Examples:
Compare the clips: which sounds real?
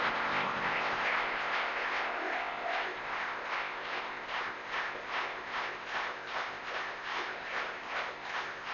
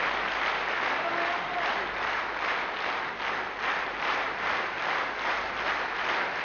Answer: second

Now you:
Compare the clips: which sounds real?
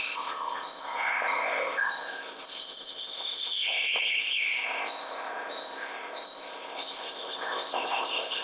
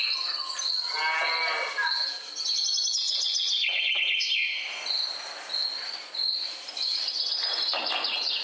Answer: second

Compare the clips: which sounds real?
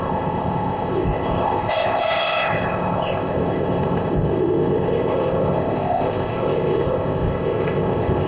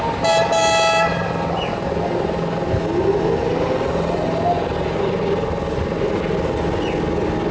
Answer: second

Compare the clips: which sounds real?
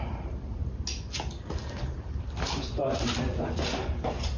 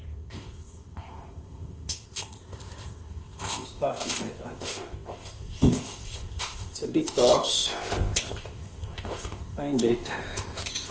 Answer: first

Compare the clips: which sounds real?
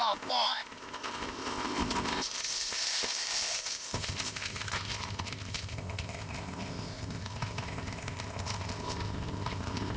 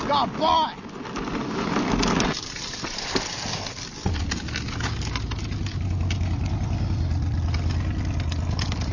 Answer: second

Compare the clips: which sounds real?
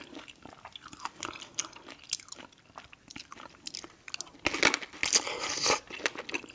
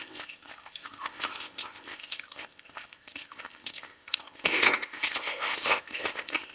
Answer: first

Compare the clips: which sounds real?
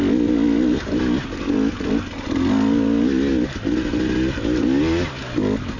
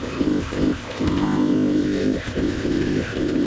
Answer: first